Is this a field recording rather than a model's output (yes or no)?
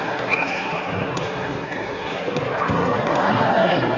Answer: no